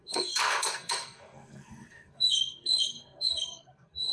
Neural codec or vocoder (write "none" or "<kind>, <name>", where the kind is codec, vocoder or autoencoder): codec, SNAC